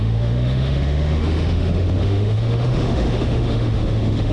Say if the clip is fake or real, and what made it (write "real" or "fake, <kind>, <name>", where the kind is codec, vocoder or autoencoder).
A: fake, autoencoder, DAC-VAE